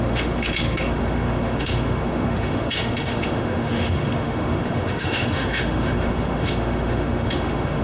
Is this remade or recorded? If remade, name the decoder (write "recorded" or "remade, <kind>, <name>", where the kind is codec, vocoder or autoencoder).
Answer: remade, autoencoder, DAC-VAE